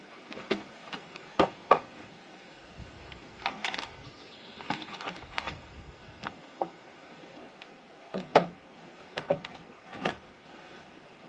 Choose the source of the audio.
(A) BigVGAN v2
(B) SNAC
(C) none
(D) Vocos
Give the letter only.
B